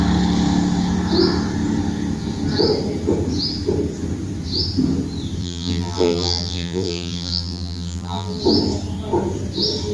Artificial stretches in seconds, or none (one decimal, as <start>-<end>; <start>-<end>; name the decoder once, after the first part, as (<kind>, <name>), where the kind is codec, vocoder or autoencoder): 5.4-8.4 (vocoder, BigVGAN v2)